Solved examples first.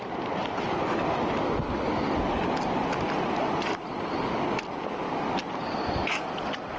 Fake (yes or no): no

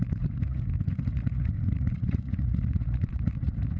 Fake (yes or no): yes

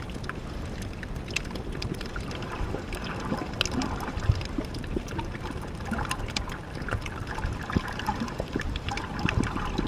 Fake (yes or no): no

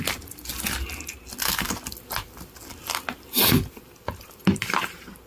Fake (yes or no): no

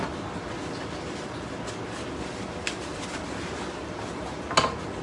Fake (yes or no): no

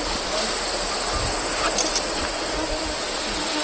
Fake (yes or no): no